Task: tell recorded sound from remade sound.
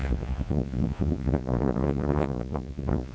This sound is remade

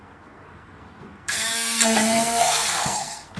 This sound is remade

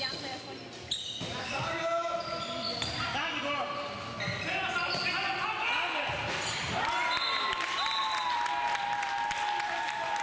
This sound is recorded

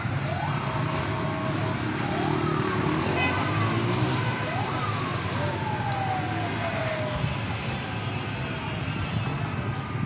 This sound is recorded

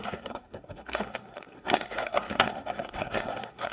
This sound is remade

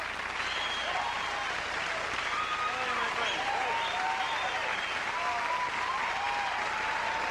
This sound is recorded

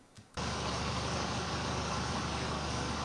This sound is remade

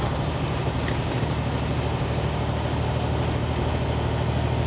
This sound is recorded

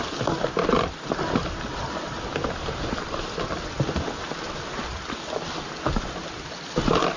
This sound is recorded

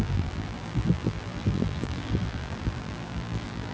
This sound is remade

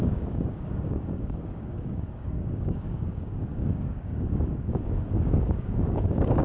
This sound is remade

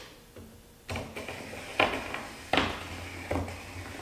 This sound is recorded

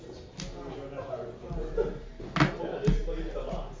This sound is recorded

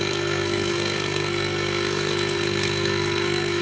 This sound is remade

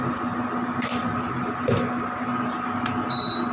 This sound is remade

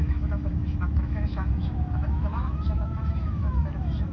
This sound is remade